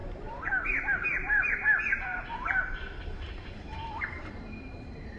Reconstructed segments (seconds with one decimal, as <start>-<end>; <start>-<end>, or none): 0.0-1.5; 2.1-5.2